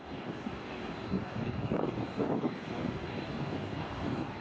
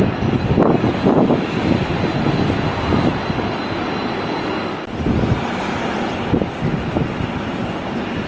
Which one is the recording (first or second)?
second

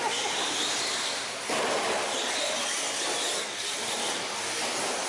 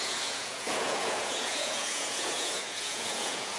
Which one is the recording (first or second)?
first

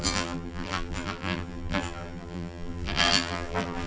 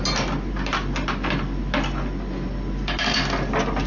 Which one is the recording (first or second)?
second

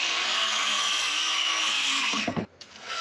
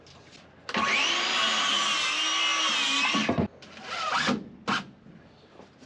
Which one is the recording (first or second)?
second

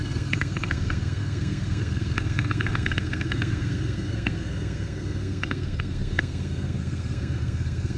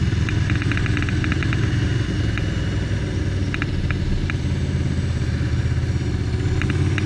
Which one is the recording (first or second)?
second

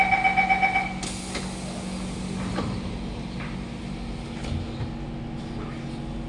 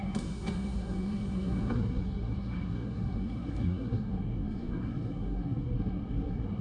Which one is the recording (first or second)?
first